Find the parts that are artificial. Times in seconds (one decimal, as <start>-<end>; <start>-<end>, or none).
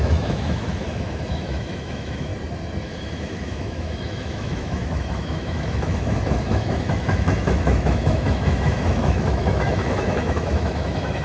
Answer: 0.0-2.3; 2.8-11.2